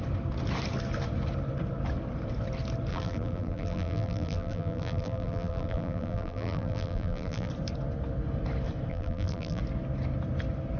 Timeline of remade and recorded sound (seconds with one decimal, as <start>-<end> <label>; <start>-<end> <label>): 0.0-2.9 recorded; 2.9-7.5 remade; 7.5-8.9 recorded; 8.9-9.6 remade; 9.6-10.8 recorded